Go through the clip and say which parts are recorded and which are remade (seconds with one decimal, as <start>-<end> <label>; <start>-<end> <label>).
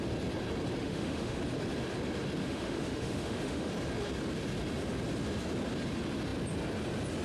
0.0-0.8 recorded; 0.8-1.4 remade; 1.4-2.4 recorded; 2.4-3.7 remade; 3.7-7.2 recorded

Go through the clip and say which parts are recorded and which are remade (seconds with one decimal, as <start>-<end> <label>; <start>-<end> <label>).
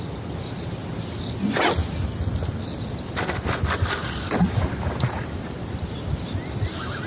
0.0-7.1 recorded